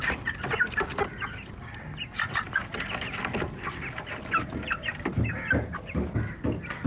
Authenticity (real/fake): real